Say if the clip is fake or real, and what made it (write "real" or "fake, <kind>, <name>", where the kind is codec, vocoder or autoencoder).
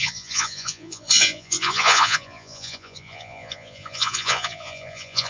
fake, vocoder, Vocos